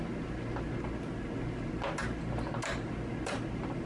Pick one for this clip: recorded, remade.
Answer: recorded